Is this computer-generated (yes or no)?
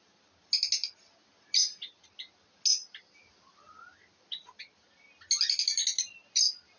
no